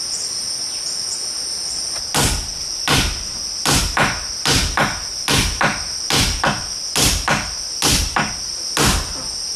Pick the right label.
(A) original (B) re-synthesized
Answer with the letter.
A